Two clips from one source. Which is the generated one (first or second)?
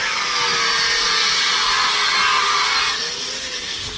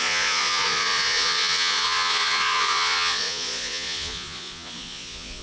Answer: second